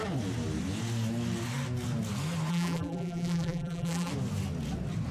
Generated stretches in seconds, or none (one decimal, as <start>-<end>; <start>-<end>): 2.5-4.1